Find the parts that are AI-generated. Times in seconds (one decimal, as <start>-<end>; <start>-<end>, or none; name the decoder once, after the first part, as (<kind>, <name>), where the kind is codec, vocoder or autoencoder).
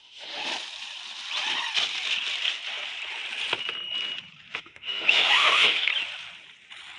0.0-0.5 (autoencoder, DAC-VAE); 4.6-5.9